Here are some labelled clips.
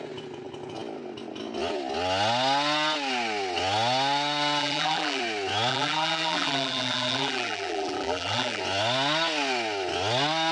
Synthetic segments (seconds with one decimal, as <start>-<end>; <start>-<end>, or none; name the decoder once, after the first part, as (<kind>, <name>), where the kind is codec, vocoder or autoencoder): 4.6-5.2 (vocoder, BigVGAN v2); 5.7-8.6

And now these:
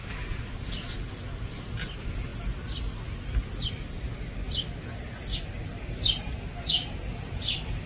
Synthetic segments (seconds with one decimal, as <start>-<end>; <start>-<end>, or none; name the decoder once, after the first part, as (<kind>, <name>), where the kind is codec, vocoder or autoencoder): none

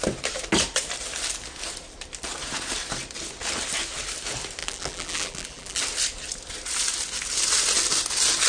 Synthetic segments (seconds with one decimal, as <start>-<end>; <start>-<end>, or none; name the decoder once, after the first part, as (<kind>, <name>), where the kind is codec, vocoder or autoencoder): 4.6-5.8 (vocoder, BigVGAN v2)